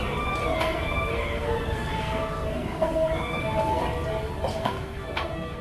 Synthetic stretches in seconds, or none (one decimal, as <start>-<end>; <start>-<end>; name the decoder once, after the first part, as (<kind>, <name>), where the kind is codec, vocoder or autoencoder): 0.4-3.8 (codec, SNAC); 4.5-5.6